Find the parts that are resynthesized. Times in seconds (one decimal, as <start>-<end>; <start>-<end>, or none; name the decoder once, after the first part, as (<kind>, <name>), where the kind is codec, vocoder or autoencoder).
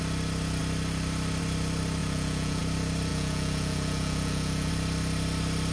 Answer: 2.0-2.6 (vocoder, Vocos); 3.1-4.7